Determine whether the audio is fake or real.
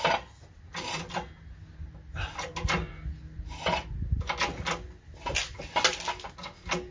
real